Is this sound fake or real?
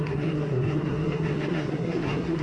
fake